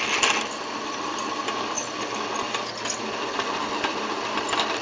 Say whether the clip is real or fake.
real